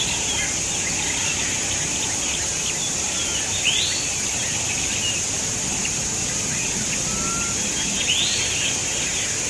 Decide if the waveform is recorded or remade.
recorded